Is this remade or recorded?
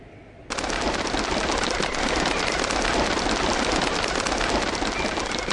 recorded